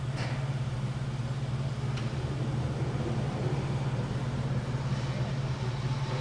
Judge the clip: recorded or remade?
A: recorded